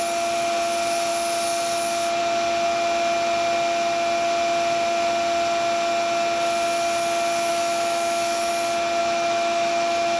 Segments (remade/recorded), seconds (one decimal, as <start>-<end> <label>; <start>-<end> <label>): 0.0-7.5 recorded; 7.5-8.5 remade; 8.5-9.0 recorded; 9.0-10.2 remade